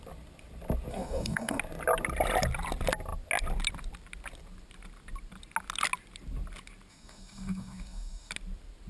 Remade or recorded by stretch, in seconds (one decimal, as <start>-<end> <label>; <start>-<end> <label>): 0.0-0.9 recorded; 0.9-1.6 remade; 1.6-6.9 recorded; 6.9-8.3 remade; 8.3-8.9 recorded